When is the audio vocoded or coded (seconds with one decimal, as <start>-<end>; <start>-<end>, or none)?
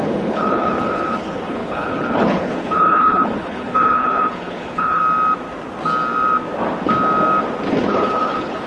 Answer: 0.0-5.0; 7.7-8.7